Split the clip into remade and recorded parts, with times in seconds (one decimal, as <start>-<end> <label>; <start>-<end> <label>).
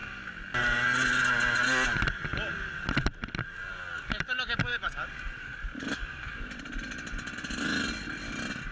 0.0-4.7 recorded; 4.7-6.6 remade; 6.6-8.7 recorded